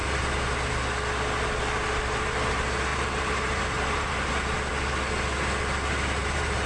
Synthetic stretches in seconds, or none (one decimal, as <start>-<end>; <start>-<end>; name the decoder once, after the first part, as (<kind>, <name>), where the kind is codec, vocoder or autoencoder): 2.9-4.3 (vocoder, BigVGAN v2); 6.2-6.7